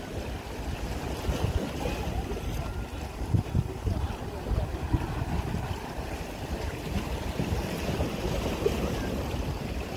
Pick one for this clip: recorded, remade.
recorded